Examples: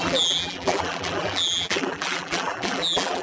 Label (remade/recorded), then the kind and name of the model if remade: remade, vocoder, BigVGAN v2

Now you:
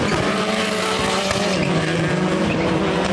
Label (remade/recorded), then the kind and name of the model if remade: recorded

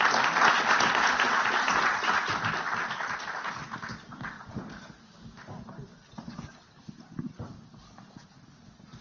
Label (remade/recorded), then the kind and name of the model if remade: recorded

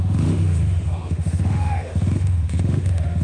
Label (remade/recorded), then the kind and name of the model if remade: remade, autoencoder, DAC-VAE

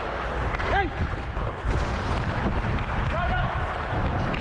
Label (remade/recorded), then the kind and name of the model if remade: recorded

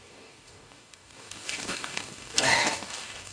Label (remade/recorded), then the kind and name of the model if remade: remade, codec, DAC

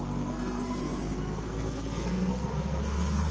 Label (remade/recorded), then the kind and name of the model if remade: remade, codec, SNAC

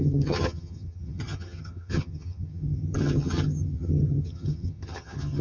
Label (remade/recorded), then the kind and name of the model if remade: remade, vocoder, HiFi-GAN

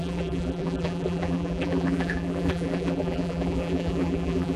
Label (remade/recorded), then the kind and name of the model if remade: remade, vocoder, BigVGAN v2